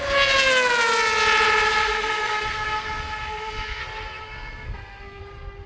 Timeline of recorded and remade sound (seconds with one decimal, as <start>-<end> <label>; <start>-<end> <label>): 0.0-1.8 recorded; 1.8-3.8 remade; 3.8-4.2 recorded; 4.2-5.2 remade; 5.2-5.7 recorded